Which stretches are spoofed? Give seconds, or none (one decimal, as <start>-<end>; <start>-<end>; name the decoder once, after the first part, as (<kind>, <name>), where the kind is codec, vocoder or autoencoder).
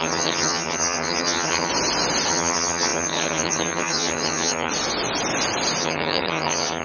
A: 0.0-1.7 (vocoder, HiFi-GAN); 2.3-4.7; 5.8-6.8